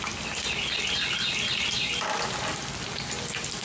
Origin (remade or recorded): recorded